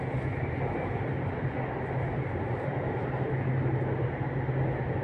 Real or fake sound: real